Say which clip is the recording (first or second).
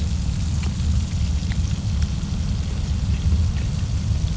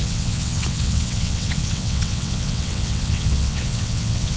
first